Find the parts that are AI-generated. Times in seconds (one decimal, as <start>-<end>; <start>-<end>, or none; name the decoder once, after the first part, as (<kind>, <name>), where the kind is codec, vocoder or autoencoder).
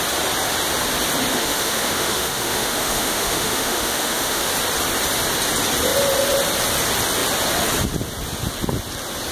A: 1.3-4.5 (autoencoder, DAC-VAE)